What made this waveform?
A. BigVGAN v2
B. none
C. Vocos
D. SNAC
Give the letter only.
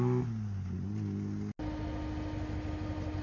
B